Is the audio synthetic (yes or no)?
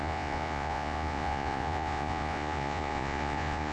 yes